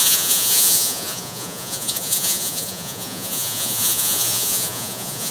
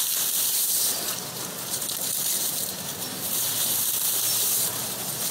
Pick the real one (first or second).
second